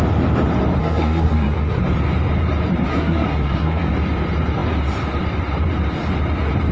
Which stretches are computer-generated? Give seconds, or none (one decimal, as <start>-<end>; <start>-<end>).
0.8-1.8; 2.9-3.9